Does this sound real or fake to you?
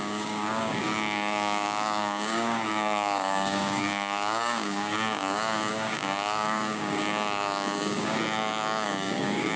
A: fake